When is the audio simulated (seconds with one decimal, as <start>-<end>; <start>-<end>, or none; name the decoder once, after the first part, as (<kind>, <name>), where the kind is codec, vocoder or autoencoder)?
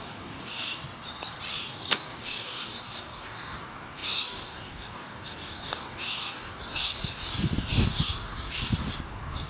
0.0-0.8 (codec, DAC); 1.5-9.5